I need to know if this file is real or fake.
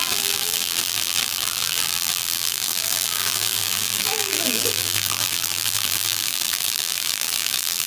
fake